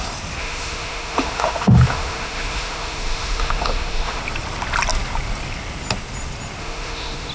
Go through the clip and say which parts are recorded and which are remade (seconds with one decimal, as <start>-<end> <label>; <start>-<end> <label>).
0.0-0.4 recorded; 0.4-4.2 remade; 4.2-6.6 recorded; 6.6-7.3 remade